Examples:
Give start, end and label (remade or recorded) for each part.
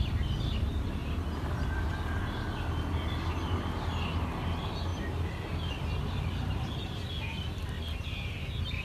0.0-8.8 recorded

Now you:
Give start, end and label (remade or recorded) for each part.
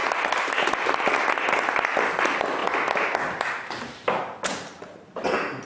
0.0-5.7 recorded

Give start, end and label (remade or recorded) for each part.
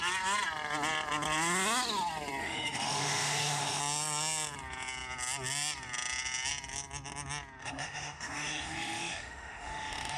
0.0-2.4 recorded; 2.4-3.8 remade; 3.8-7.6 recorded; 7.6-10.2 remade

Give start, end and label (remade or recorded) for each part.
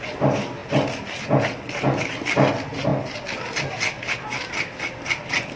0.0-5.6 recorded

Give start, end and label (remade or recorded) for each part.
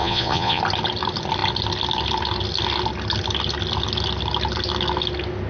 0.0-0.6 remade; 0.6-5.5 recorded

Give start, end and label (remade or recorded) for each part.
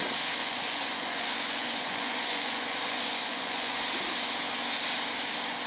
0.0-0.4 recorded; 0.4-3.8 remade; 3.8-5.7 recorded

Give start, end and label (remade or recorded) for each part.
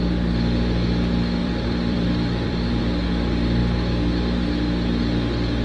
0.0-1.4 recorded; 1.4-2.8 remade; 2.8-5.6 recorded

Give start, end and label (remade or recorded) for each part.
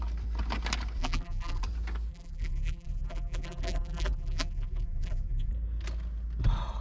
0.0-1.0 recorded; 1.0-1.6 remade; 1.6-2.1 recorded; 2.1-5.5 remade; 5.5-6.8 recorded